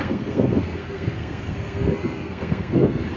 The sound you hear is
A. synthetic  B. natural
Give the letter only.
A